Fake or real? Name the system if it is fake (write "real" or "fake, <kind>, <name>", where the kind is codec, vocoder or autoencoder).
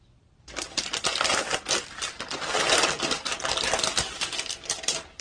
real